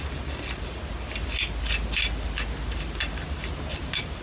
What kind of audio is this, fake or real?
real